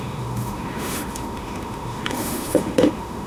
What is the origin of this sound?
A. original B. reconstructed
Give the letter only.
B